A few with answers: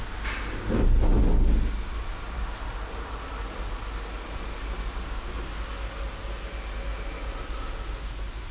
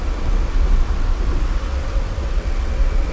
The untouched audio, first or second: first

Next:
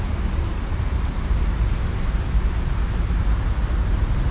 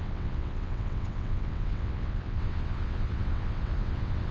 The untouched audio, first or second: first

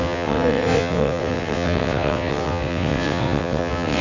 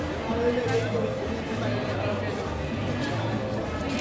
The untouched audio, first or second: second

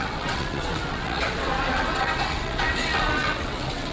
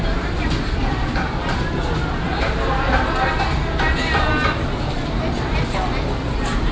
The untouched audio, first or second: second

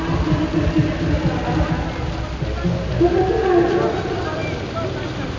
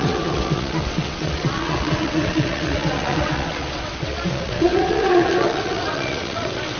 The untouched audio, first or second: first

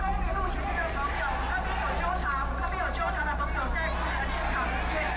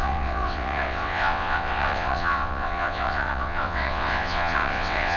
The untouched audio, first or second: first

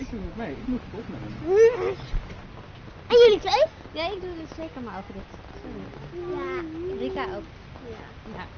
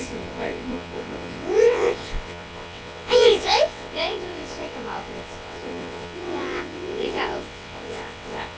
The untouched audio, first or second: first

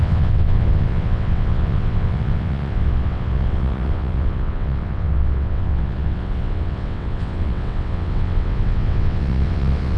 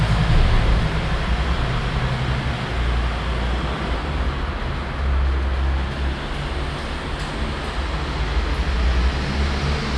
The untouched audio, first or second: second